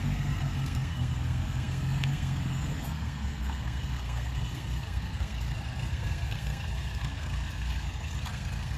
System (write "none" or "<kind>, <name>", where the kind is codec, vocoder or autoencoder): codec, SNAC